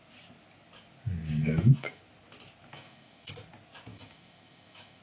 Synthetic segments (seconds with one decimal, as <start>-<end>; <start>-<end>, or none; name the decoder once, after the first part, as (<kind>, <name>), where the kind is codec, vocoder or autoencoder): 1.4-2.0 (autoencoder, DAC-VAE); 2.7-3.3; 3.9-5.0